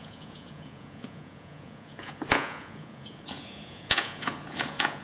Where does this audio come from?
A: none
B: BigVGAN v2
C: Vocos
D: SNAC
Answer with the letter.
C